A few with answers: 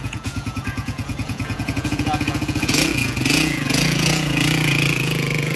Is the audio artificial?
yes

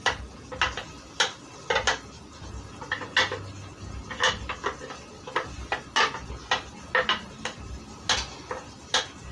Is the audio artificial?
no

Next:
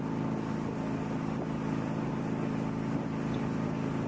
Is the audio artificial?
no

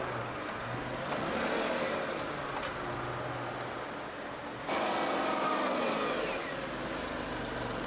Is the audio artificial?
no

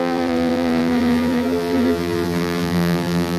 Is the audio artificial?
yes